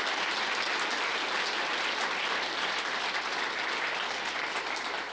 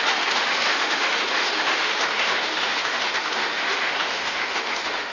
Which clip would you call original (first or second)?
first